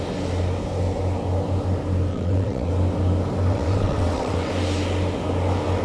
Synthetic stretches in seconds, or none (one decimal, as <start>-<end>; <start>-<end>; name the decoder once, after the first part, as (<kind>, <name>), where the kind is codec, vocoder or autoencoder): 2.1-2.7 (vocoder, WaveNeXt); 3.5-4.5

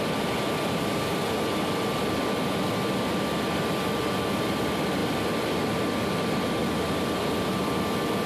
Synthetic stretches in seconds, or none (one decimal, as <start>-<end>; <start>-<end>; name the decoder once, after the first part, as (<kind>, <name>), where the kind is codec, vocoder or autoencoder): none

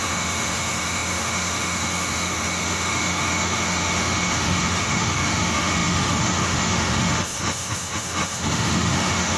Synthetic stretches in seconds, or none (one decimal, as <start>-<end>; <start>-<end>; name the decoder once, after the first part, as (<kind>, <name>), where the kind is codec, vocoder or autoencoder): 0.0-9.4 (autoencoder, DAC-VAE)

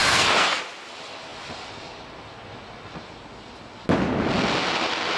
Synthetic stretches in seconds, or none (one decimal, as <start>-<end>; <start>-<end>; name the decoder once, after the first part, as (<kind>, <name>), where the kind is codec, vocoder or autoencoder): 0.0-0.6 (codec, SNAC)

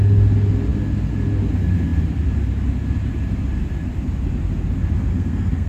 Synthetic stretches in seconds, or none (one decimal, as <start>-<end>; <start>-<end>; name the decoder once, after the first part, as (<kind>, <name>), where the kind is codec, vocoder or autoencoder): 5.1-5.7 (codec, SNAC)

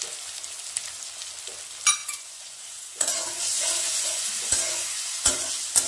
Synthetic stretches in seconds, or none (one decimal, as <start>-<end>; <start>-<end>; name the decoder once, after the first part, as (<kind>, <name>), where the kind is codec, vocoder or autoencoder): 2.0-5.5 (vocoder, Vocos)

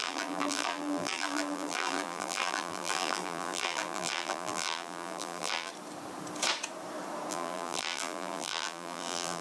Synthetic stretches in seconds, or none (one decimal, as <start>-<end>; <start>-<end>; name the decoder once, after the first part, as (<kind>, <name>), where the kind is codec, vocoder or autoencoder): 0.0-5.7 (vocoder, BigVGAN v2); 7.3-9.4